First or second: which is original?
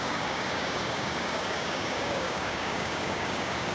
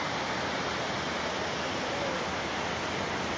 second